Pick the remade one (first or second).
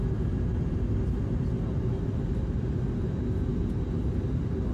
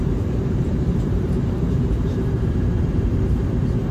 second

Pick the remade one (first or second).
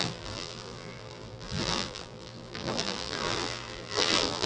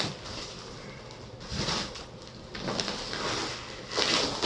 first